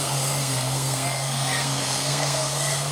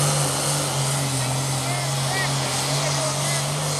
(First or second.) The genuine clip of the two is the second